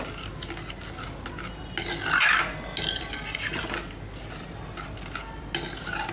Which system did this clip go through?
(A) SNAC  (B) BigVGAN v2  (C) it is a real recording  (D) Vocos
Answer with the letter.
C